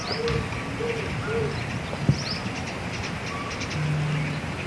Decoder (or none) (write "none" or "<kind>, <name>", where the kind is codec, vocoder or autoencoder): none